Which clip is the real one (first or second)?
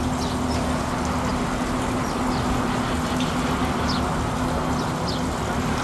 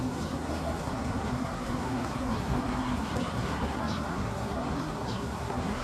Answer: first